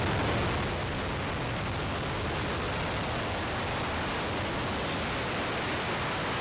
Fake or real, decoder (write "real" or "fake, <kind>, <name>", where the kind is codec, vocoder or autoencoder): real